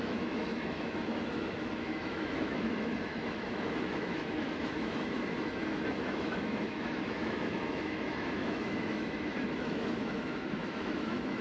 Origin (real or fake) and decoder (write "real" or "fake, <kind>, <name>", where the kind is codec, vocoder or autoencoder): fake, autoencoder, DAC-VAE